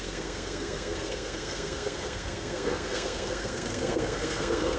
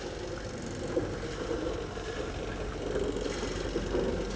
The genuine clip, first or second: second